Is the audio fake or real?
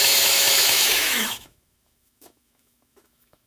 fake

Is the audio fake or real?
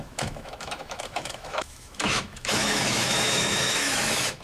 fake